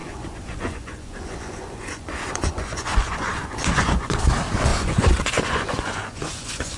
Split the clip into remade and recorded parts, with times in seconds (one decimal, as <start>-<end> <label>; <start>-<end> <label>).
0.0-4.1 remade; 4.1-4.7 recorded; 4.7-6.8 remade